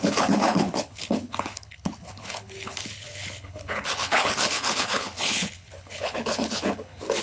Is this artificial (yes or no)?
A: yes